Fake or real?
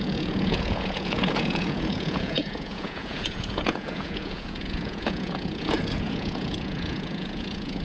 fake